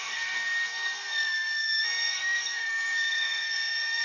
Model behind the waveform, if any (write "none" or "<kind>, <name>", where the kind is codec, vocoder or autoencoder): codec, SNAC